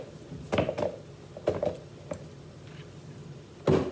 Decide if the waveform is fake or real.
real